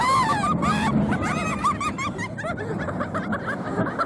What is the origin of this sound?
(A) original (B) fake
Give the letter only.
A